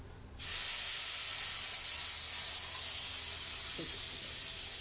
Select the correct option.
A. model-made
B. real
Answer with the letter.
B